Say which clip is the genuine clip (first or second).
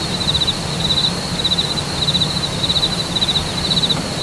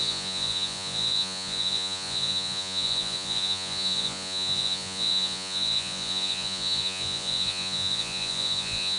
first